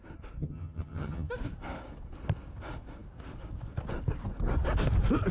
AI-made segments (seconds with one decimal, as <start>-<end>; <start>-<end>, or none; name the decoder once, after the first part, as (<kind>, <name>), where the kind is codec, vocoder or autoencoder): 0.4-1.3 (vocoder, HiFi-GAN)